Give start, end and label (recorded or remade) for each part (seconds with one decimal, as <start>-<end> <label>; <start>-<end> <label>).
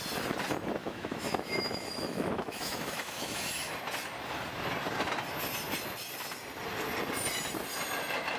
0.0-0.8 recorded; 0.8-3.7 remade; 3.7-8.4 recorded